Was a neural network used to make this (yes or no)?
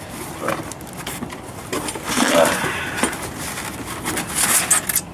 no